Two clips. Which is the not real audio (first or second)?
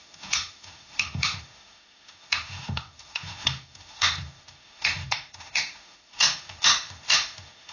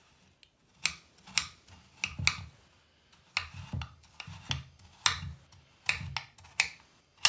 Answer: first